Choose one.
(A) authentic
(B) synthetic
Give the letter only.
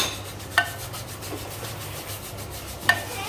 A